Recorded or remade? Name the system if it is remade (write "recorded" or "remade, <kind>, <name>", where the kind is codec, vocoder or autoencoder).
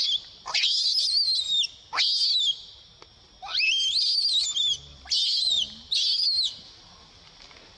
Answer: recorded